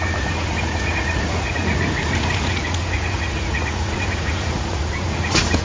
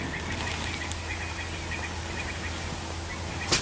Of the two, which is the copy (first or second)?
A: first